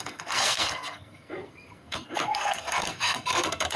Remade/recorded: remade